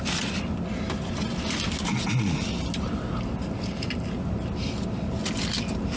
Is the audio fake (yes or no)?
no